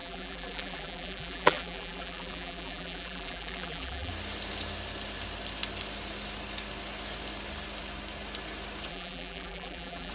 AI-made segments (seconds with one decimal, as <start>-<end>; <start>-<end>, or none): 0.0-4.1; 8.9-10.1